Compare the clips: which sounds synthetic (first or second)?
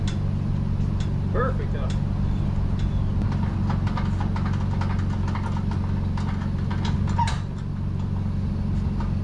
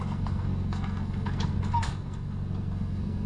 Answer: second